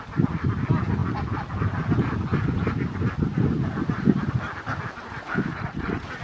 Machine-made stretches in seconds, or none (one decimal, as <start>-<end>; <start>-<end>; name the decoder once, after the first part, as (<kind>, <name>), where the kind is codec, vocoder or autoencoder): none